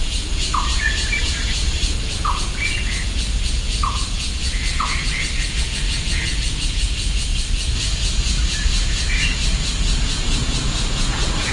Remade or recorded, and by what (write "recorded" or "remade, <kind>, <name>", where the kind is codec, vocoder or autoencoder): remade, vocoder, Vocos